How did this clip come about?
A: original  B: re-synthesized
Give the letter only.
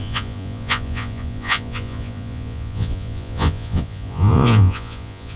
B